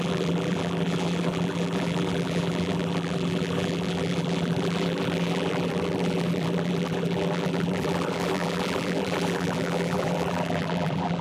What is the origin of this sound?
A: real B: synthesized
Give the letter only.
B